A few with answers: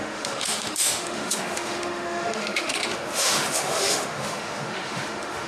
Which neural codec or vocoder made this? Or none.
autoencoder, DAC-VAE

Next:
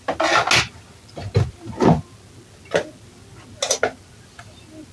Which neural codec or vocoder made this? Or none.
none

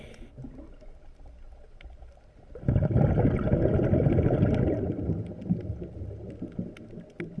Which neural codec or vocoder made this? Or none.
none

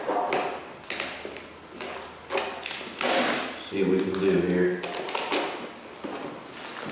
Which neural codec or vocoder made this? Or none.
none